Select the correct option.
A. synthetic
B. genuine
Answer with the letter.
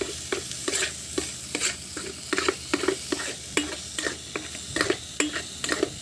B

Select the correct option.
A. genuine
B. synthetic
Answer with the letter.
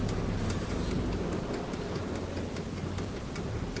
A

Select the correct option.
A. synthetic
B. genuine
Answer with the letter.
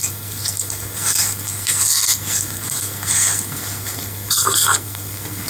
A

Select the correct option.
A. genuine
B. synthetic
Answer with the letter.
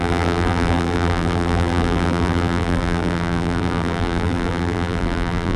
B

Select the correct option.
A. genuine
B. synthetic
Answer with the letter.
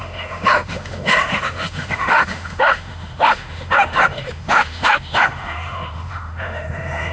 B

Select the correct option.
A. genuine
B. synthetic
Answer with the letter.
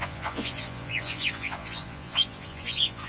B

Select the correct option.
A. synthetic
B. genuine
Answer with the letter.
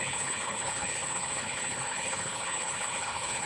A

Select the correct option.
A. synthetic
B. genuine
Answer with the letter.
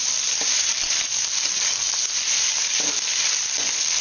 A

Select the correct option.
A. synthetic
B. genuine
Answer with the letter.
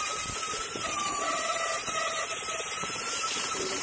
A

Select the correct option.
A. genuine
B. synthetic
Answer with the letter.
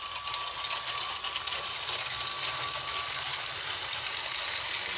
A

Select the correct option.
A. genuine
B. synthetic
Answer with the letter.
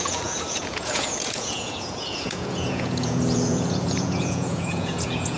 B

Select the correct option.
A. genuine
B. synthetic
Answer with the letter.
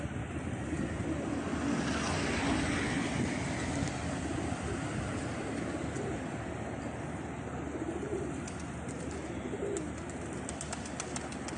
A